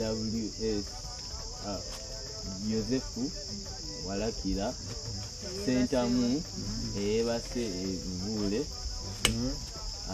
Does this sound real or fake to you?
real